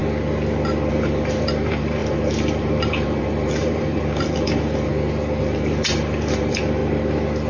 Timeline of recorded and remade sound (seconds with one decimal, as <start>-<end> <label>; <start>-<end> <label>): 0.0-0.9 recorded; 0.9-4.9 remade; 4.9-5.4 recorded; 5.4-6.8 remade; 6.8-7.5 recorded